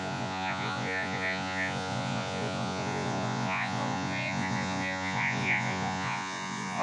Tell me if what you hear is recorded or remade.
remade